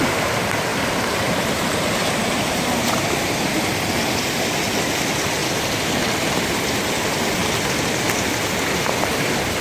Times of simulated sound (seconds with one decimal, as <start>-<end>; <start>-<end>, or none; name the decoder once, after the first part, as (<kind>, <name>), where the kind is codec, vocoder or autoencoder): 0.7-3.5 (vocoder, BigVGAN v2)